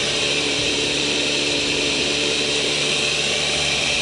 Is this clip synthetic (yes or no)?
yes